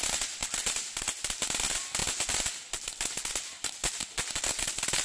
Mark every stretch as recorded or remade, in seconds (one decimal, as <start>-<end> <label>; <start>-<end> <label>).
0.0-5.0 recorded